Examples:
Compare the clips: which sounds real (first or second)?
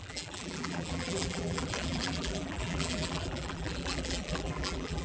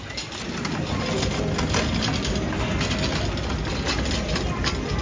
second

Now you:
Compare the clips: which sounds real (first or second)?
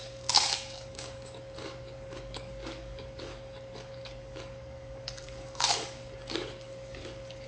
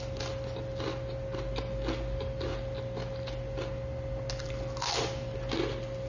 second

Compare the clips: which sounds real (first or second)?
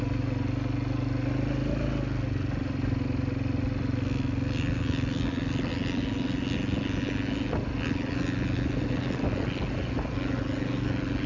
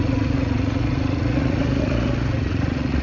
first